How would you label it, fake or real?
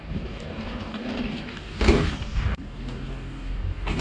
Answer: fake